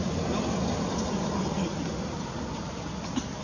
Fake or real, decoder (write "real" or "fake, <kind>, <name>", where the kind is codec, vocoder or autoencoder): real